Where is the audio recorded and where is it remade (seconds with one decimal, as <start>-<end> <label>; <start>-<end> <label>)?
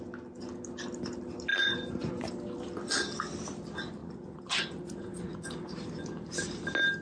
0.0-1.5 recorded; 1.5-2.3 remade; 2.3-4.0 recorded; 4.0-5.3 remade; 5.3-7.0 recorded